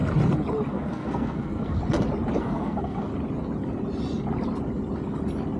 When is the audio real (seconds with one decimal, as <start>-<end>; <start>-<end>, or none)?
0.0-0.7; 1.8-2.4; 3.1-5.6